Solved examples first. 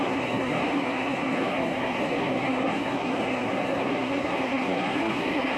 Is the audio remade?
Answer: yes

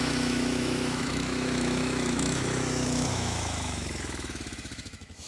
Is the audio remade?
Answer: yes